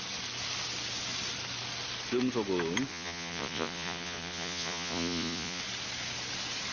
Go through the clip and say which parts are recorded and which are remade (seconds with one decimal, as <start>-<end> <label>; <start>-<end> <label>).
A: 0.0-2.9 recorded; 2.9-5.6 remade; 5.6-6.7 recorded